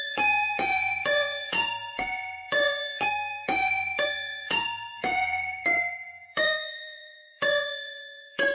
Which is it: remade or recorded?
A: remade